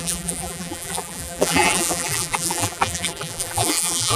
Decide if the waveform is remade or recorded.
remade